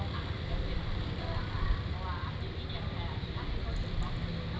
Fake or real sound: real